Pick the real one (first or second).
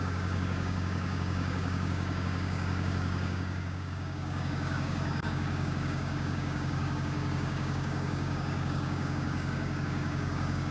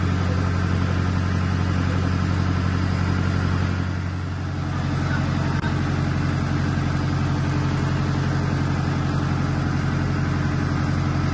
second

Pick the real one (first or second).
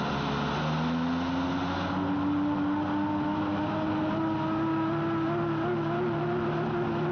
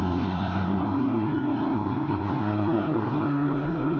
first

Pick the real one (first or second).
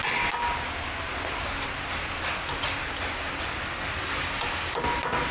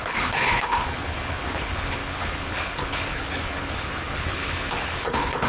first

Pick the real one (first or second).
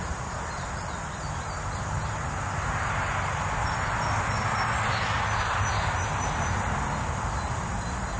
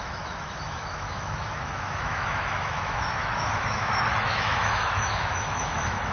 first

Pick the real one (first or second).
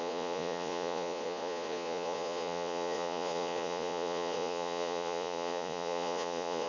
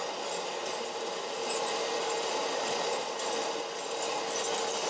second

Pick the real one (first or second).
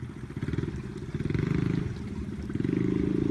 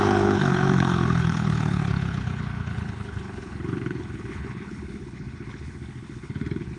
first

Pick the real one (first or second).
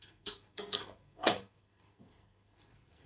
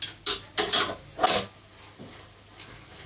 second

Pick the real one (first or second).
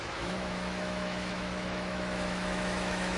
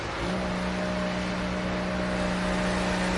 second